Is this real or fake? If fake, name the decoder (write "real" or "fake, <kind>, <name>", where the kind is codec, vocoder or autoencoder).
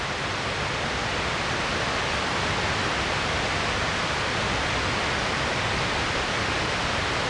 real